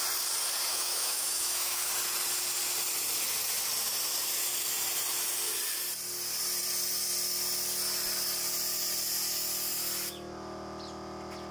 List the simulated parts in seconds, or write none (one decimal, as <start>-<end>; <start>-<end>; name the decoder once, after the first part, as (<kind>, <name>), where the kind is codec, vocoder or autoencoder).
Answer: 0.7-1.9 (autoencoder, DAC-VAE)